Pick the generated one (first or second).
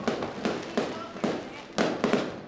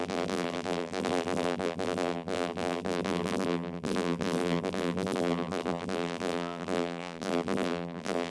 second